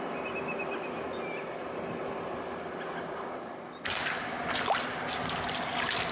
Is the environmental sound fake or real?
real